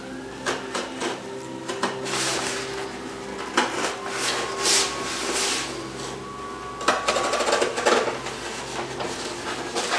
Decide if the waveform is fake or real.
real